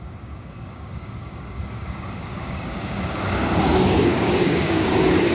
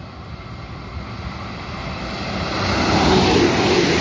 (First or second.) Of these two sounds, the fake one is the first